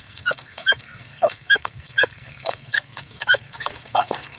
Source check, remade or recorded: remade